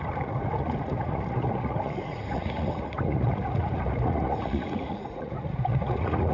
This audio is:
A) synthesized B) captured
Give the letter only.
A